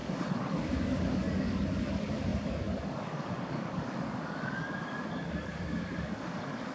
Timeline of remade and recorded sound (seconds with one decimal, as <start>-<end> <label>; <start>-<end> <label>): 0.0-6.7 remade